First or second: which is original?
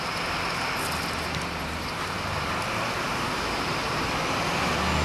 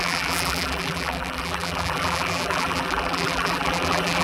first